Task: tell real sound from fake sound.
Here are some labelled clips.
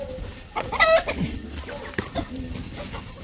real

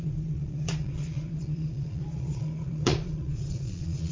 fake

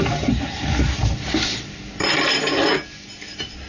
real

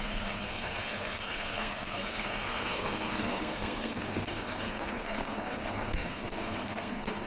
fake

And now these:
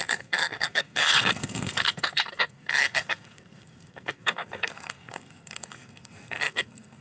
fake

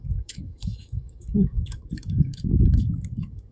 fake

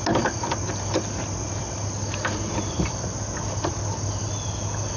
real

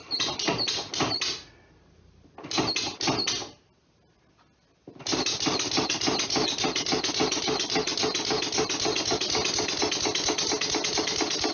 real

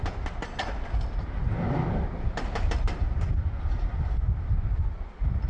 real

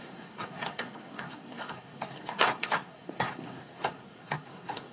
fake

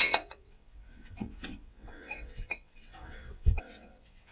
fake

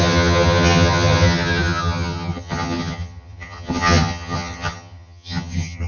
fake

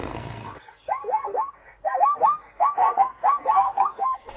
fake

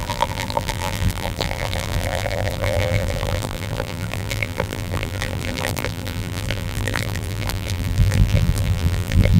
fake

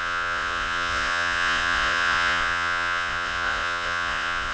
fake